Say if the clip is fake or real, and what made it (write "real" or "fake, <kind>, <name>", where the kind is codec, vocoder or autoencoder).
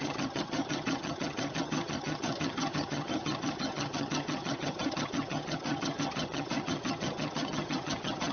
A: fake, vocoder, HiFi-GAN